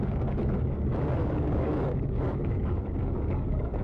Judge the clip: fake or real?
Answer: fake